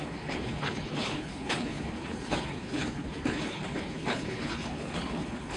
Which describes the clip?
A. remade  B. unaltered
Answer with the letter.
A